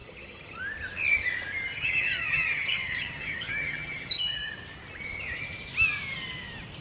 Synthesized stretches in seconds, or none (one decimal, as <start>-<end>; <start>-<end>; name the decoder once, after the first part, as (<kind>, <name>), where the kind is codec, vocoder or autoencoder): 0.0-0.6 (vocoder, HiFi-GAN); 1.7-4.5